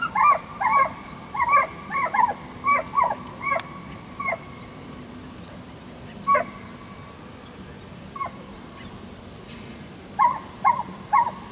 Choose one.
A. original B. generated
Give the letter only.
A